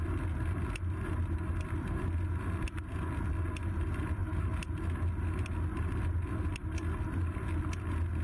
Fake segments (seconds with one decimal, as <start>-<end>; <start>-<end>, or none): 4.2-4.7